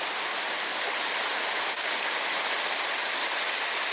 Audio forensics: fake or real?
real